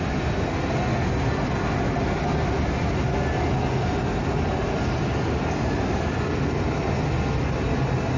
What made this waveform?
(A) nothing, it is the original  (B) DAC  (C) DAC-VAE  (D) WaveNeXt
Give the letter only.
A